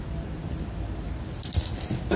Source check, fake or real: real